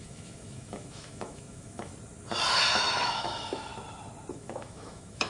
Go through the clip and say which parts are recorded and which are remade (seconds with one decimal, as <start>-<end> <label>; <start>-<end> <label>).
0.0-1.9 remade; 1.9-2.8 recorded; 2.8-3.7 remade; 3.7-4.3 recorded; 4.3-5.3 remade